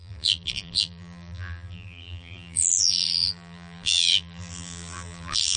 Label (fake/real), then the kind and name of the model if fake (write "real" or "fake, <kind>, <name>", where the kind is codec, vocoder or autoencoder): fake, vocoder, BigVGAN v2